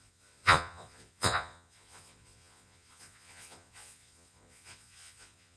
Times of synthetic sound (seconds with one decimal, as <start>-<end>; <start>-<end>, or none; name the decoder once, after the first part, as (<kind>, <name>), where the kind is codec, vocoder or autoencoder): 0.0-5.6 (vocoder, Vocos)